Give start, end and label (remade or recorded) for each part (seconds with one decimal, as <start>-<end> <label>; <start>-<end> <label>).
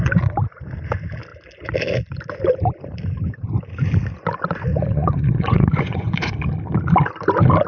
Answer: 0.0-4.7 recorded; 4.7-6.4 remade; 6.4-7.7 recorded